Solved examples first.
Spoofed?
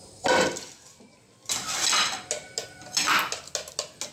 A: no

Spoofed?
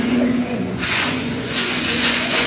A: yes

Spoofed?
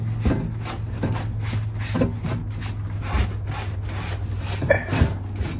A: no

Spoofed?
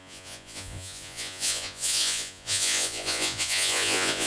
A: yes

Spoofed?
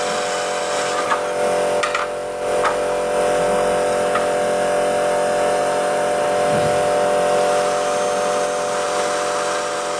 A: no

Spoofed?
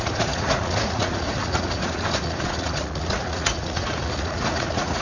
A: yes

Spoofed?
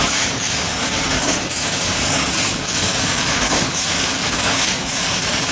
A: yes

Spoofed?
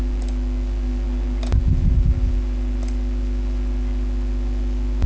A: no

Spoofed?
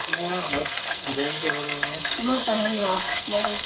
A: yes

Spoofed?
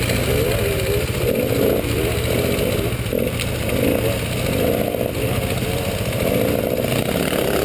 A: no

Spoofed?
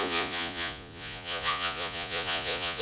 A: yes